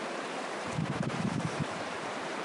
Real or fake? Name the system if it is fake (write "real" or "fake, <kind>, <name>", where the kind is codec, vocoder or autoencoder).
fake, vocoder, BigVGAN v2